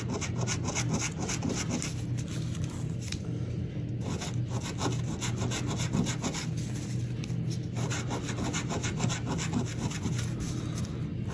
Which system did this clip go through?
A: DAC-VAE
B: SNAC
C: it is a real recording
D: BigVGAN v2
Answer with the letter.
C